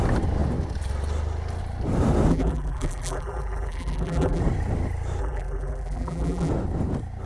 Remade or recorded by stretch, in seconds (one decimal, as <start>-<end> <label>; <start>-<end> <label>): 0.0-2.3 recorded; 2.3-4.4 remade; 4.4-5.2 recorded; 5.2-6.5 remade; 6.5-7.3 recorded